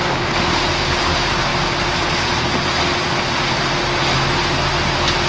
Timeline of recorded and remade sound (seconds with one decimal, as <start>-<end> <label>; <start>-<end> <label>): 0.0-5.3 recorded